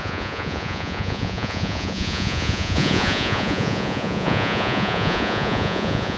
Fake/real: fake